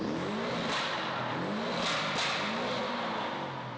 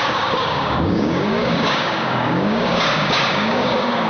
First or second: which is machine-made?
second